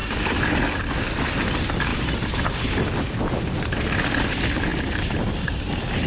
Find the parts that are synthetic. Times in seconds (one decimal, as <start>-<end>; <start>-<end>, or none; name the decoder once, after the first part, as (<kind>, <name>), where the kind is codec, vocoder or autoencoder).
0.0-0.8 (vocoder, BigVGAN v2); 1.9-3.2; 4.7-6.1